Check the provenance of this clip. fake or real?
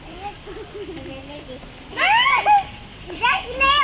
real